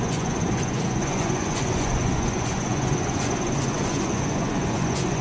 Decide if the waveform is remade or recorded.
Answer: remade